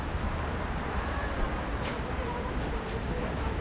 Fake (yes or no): yes